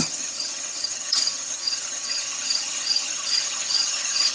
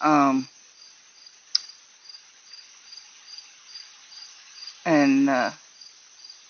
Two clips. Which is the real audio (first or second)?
second